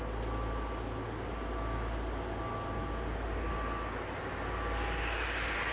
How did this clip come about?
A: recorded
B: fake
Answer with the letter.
A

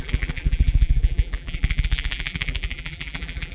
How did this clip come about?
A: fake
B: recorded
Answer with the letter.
A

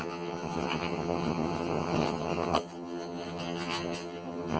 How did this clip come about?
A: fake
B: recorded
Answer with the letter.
A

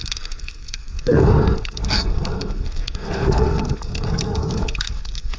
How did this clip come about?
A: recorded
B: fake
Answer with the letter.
B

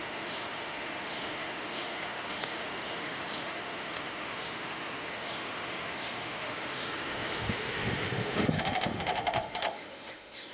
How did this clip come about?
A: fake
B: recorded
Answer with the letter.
A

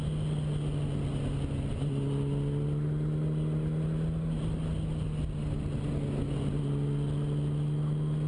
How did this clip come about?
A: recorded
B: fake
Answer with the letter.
A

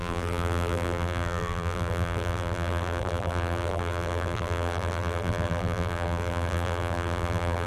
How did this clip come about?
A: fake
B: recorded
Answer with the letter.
A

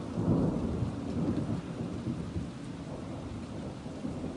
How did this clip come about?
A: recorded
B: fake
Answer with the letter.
A